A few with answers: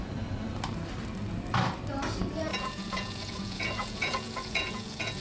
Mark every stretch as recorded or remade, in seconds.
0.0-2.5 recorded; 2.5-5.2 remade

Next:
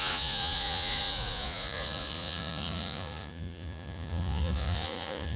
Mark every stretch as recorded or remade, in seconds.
0.0-5.4 remade

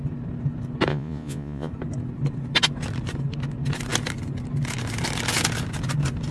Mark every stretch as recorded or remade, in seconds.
0.0-0.9 recorded; 0.9-1.7 remade; 1.7-6.3 recorded

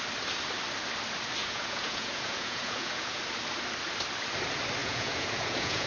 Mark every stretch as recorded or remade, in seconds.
0.0-1.4 recorded; 1.4-3.2 remade; 3.2-4.8 recorded; 4.8-5.9 remade

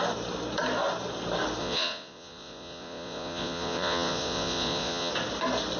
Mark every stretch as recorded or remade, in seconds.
0.0-1.6 recorded; 1.6-5.1 remade; 5.1-5.8 recorded